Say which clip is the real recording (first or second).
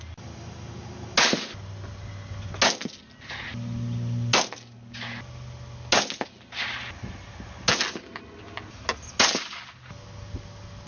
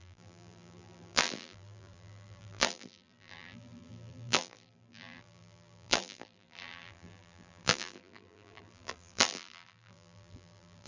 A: first